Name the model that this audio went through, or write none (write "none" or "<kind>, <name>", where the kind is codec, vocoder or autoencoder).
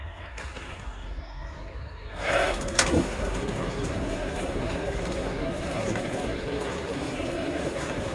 codec, SNAC